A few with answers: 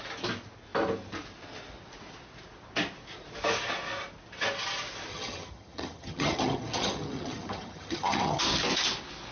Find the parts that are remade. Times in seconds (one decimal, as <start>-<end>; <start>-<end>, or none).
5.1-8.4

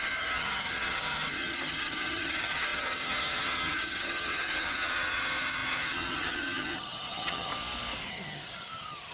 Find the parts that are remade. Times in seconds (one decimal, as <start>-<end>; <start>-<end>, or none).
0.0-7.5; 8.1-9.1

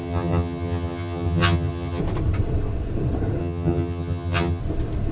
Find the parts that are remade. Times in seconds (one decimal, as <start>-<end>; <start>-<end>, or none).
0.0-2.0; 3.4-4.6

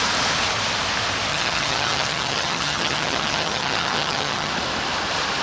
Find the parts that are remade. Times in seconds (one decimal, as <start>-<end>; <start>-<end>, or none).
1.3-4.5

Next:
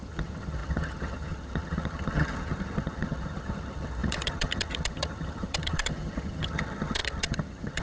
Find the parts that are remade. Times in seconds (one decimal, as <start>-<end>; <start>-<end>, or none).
0.0-7.8